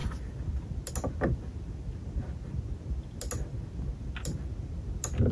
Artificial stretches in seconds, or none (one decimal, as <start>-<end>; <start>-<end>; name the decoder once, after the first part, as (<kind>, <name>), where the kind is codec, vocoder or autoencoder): none